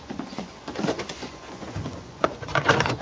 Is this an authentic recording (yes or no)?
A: no